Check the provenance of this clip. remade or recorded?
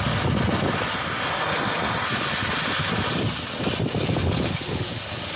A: recorded